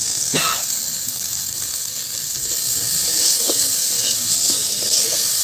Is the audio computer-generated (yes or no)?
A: yes